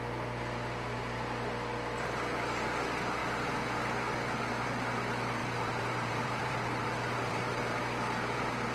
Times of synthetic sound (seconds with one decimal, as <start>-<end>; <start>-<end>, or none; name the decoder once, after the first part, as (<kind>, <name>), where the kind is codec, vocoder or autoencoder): 5.4-7.8 (vocoder, BigVGAN v2)